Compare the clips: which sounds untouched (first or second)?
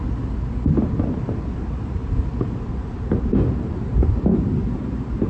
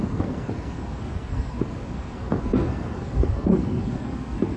first